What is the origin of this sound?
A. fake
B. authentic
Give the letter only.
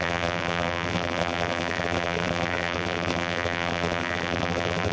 A